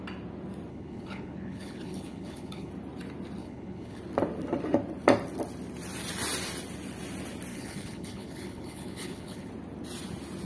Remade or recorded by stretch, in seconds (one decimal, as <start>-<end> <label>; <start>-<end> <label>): 0.0-0.7 recorded; 0.7-2.7 remade; 2.7-3.4 recorded; 3.4-4.0 remade; 4.0-7.5 recorded; 7.5-9.5 remade; 9.5-10.4 recorded